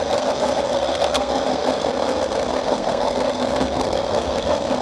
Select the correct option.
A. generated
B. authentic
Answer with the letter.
A